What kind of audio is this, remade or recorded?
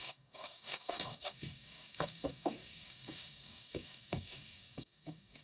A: remade